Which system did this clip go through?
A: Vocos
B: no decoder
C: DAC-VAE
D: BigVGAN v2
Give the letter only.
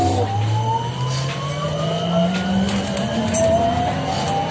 B